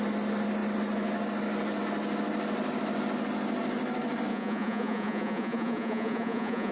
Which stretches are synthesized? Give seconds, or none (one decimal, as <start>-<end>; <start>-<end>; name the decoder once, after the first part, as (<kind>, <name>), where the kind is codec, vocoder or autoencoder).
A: 4.3-6.7 (vocoder, Vocos)